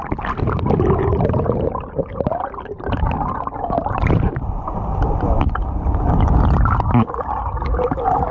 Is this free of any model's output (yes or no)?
yes